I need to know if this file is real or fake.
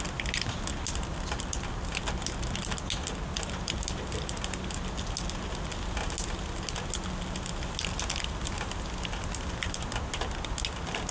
real